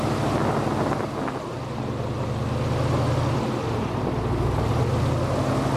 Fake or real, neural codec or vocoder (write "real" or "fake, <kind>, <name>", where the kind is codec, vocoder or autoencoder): real